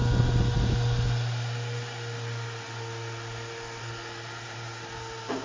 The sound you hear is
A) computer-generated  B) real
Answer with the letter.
B